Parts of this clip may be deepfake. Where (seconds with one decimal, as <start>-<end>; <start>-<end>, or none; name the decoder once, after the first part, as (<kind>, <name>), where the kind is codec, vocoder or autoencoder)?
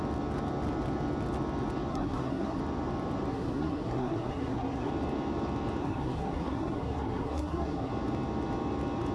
1.9-2.6 (codec, SNAC); 3.3-4.9; 5.8-7.9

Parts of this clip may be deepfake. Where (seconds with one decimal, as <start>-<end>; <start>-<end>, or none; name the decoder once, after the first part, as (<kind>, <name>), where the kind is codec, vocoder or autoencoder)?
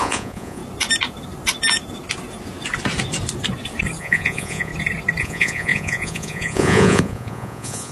0.0-0.6 (vocoder, Vocos); 4.0-4.7; 5.2-7.9